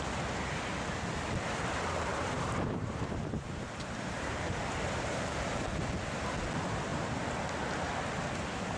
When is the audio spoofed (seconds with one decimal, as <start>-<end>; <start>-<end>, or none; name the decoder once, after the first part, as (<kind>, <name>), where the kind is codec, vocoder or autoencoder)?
2.1-5.4 (vocoder, BigVGAN v2)